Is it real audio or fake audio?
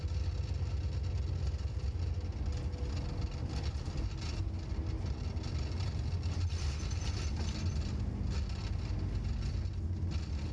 real